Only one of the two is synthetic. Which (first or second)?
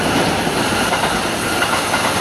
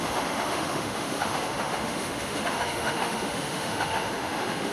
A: second